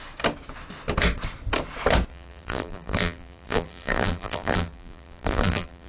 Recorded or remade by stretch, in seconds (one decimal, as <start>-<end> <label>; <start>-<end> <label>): 0.0-2.1 recorded; 2.1-5.9 remade